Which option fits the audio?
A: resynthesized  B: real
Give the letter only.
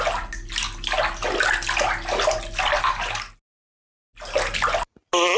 B